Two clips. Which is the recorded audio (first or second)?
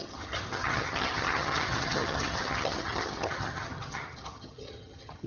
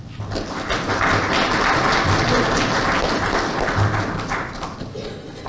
second